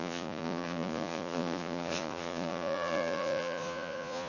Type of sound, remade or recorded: remade